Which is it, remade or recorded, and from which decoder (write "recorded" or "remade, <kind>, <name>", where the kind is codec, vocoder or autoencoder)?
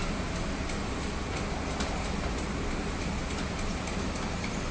recorded